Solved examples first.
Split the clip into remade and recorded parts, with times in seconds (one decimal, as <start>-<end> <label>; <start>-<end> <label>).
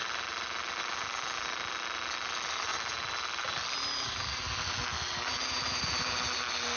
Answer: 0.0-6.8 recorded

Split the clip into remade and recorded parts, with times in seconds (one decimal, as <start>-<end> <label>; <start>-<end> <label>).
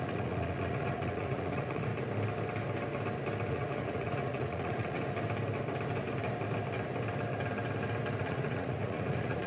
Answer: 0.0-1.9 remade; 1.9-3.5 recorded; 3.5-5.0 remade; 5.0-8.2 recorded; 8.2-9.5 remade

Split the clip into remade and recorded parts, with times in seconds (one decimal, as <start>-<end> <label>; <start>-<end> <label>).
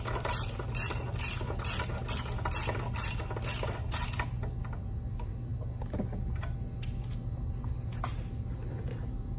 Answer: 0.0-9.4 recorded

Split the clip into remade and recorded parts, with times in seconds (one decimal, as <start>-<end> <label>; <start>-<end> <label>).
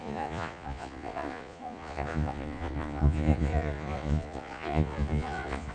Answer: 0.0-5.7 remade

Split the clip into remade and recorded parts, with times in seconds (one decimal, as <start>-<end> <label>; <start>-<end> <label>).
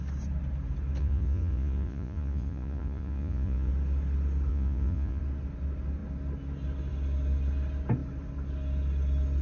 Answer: 0.0-1.0 recorded; 1.0-3.7 remade; 3.7-4.5 recorded; 4.5-5.2 remade; 5.2-9.4 recorded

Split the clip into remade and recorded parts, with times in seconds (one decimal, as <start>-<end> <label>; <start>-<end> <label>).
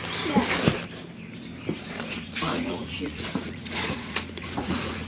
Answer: 0.0-1.8 recorded; 1.8-5.1 remade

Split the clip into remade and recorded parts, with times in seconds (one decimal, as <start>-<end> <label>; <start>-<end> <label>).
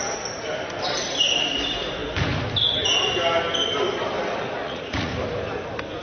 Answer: 0.0-4.6 recorded; 4.6-5.1 remade; 5.1-6.0 recorded